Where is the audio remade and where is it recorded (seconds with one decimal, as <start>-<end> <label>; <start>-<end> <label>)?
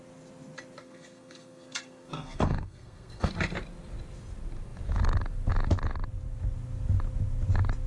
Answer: 0.0-0.8 recorded; 0.8-3.3 remade; 3.3-7.9 recorded